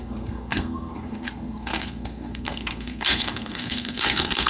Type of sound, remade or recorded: remade